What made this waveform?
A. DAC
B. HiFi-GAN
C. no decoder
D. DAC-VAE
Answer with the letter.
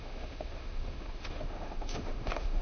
D